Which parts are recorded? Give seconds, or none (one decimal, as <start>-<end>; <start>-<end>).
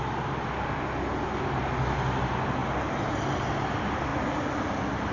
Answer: 0.0-5.1